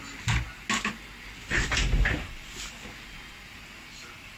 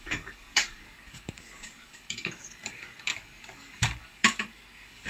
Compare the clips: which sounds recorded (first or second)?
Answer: first